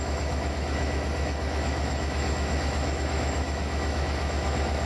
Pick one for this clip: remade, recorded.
remade